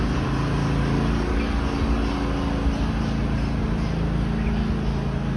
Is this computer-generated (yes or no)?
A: no